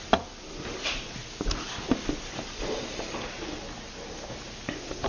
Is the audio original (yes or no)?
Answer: yes